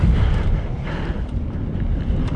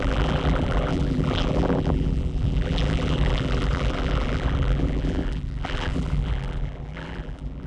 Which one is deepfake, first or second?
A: second